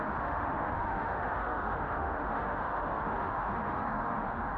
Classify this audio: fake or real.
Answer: fake